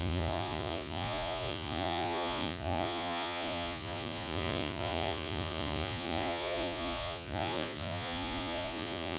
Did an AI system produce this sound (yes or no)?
yes